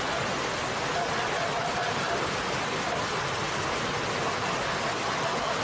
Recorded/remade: recorded